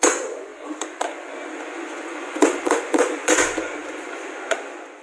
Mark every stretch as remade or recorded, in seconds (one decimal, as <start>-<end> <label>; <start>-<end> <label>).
0.0-5.0 remade